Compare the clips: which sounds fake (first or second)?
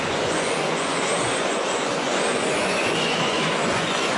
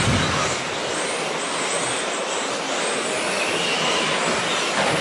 first